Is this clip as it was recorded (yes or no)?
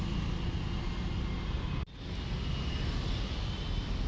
yes